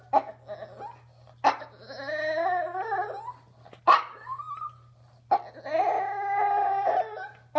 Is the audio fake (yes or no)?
no